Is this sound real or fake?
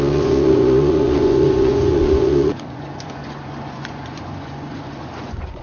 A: fake